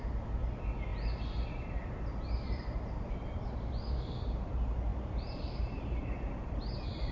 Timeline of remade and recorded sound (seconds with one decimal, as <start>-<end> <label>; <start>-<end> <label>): 0.0-0.9 recorded; 0.9-4.5 remade; 4.5-4.9 recorded; 4.9-6.1 remade; 6.1-7.1 recorded

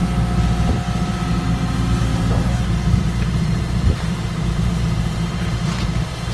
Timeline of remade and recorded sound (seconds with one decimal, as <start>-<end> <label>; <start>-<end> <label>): 0.0-2.1 recorded; 2.1-6.3 remade

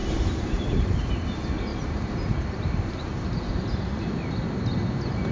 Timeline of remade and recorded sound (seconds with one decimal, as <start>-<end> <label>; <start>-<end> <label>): 0.0-1.0 remade; 1.0-1.7 recorded; 1.7-4.0 remade; 4.0-5.3 recorded

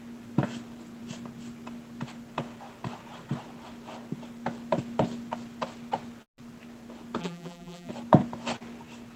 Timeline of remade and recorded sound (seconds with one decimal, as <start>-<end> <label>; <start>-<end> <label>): 0.0-7.2 recorded; 7.2-7.9 remade; 7.9-9.2 recorded

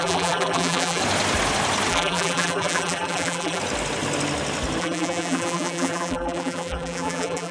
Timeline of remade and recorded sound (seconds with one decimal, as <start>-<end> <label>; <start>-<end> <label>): 0.0-1.0 remade; 1.0-1.9 recorded; 1.9-3.6 remade; 3.6-4.8 recorded; 4.8-7.5 remade

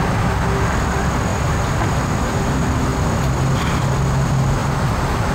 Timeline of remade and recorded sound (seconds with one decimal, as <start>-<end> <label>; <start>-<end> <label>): 0.0-5.3 recorded

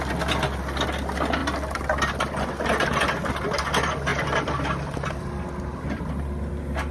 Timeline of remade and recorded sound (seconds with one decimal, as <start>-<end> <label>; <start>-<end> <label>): 0.0-4.1 recorded; 4.1-5.3 remade; 5.3-5.7 recorded; 5.7-6.5 remade; 6.5-6.9 recorded

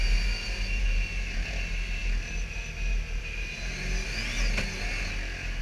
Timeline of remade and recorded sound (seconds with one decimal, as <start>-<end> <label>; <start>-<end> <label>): 0.0-5.6 recorded